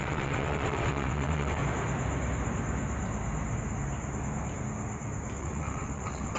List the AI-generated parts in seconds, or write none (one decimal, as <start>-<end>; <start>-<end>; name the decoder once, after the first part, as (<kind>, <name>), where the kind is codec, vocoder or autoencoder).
0.0-1.6 (vocoder, WaveNeXt); 5.4-6.4